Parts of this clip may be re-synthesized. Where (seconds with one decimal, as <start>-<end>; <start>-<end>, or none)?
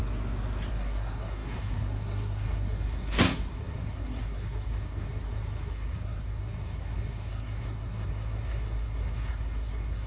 0.7-10.1